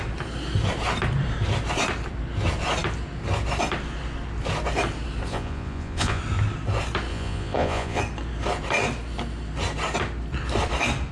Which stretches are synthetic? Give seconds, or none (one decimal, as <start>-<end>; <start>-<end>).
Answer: 5.3-6.2; 7.1-8.0